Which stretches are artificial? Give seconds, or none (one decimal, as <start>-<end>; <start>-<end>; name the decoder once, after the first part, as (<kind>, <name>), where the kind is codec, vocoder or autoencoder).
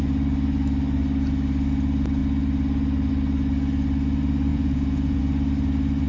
4.5-5.2 (vocoder, Vocos)